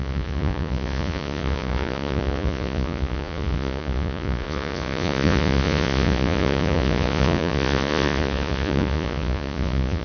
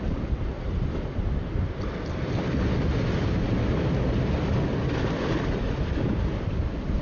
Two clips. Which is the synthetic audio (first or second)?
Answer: first